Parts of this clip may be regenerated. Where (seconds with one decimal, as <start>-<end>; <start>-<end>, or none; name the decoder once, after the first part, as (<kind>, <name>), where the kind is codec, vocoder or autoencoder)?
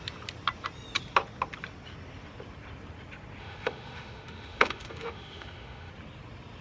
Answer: 3.4-5.9 (autoencoder, DAC-VAE)